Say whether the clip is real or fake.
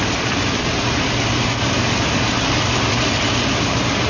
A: real